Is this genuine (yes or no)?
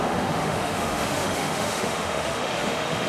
no